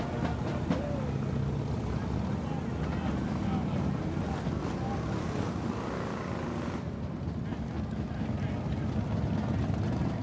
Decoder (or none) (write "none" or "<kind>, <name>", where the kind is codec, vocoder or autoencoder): none